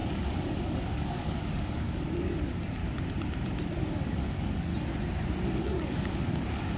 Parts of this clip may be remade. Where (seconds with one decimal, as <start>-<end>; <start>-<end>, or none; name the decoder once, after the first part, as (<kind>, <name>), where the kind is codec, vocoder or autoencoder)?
0.0-2.8 (codec, DAC); 3.8-4.7; 5.6-6.8